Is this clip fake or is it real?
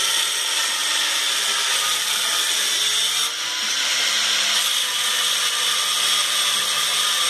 real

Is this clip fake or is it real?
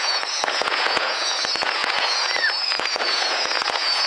fake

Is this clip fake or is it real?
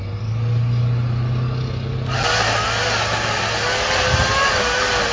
real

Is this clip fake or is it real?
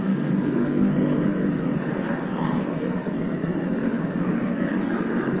fake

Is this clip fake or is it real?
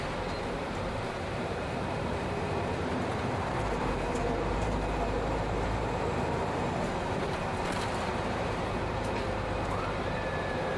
fake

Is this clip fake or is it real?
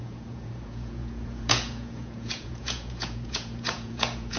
fake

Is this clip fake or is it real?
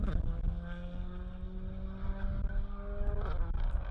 real